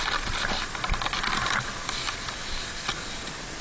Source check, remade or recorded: recorded